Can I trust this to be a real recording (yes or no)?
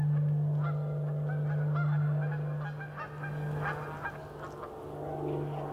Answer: yes